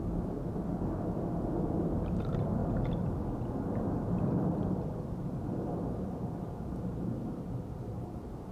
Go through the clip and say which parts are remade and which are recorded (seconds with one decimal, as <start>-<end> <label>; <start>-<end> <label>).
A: 0.0-2.6 remade; 2.6-4.4 recorded; 4.4-8.5 remade